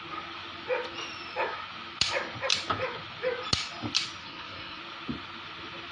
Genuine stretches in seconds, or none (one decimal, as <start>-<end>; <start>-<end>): 0.0-4.2; 4.8-5.9